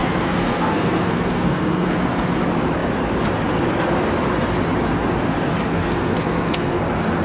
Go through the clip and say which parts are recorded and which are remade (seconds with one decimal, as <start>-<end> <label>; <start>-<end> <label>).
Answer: 0.0-2.3 remade; 2.3-5.7 recorded; 5.7-6.8 remade; 6.8-7.2 recorded

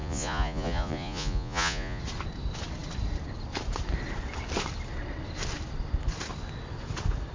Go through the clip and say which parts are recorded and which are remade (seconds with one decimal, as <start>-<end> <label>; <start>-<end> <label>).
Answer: 0.0-2.0 remade; 2.0-7.3 recorded

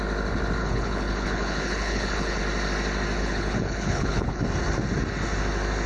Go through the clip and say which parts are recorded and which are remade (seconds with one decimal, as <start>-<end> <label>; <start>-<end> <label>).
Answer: 0.0-0.6 recorded; 0.6-2.4 remade; 2.4-3.2 recorded; 3.2-4.4 remade; 4.4-5.9 recorded

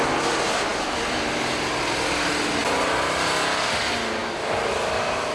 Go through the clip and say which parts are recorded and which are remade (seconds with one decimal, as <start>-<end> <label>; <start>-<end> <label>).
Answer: 0.0-5.3 recorded